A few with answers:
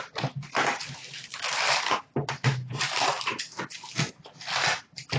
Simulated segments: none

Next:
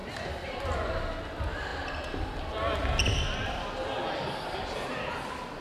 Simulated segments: 0.0-0.6 (vocoder, BigVGAN v2)

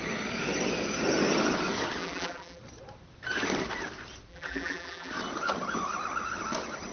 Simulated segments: 2.0-2.6 (vocoder, BigVGAN v2); 4.3-5.1

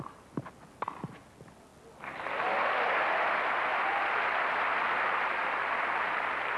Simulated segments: none

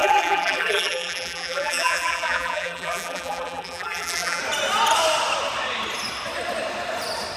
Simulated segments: 0.0-4.4 (vocoder, BigVGAN v2)

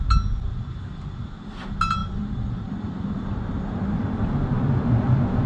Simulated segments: 2.0-4.0 (vocoder, BigVGAN v2)